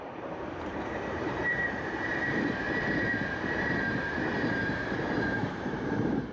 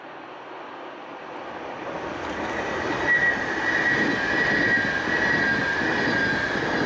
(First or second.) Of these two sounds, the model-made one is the first